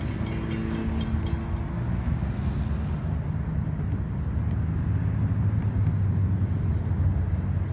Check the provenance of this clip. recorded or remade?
recorded